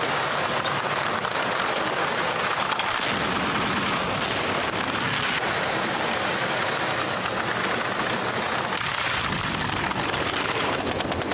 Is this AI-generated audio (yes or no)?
no